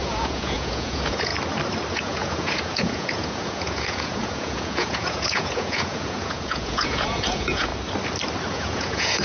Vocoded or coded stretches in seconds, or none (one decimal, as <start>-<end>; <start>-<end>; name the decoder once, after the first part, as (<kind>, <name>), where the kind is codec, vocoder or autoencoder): 0.0-1.3 (vocoder, Vocos); 1.9-7.7; 8.5-9.2